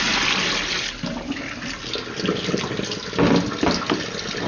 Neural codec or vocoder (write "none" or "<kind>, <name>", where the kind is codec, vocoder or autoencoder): none